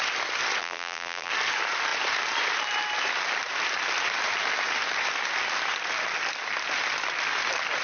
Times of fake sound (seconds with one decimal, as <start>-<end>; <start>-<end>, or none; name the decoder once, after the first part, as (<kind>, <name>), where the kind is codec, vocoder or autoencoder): 0.6-1.3 (vocoder, BigVGAN v2)